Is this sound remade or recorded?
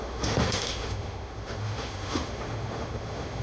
remade